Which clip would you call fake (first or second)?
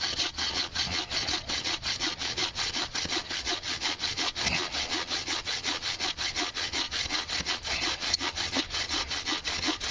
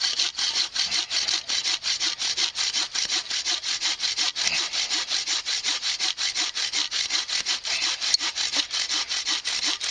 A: first